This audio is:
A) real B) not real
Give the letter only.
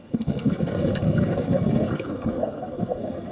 B